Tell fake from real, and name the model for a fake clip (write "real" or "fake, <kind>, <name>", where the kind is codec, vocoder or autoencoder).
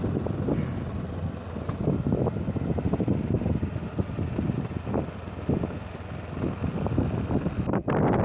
real